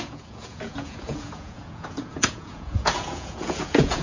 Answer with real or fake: fake